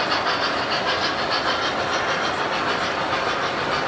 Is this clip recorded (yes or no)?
yes